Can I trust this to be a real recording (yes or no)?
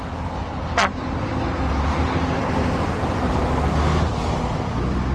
yes